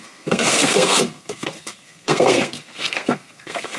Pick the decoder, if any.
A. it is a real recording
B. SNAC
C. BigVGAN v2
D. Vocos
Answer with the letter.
B